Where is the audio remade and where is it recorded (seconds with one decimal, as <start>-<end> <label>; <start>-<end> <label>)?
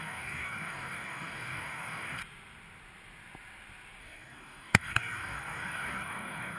0.0-2.2 remade; 2.2-4.0 recorded; 4.0-6.6 remade